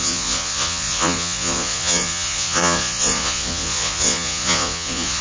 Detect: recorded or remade remade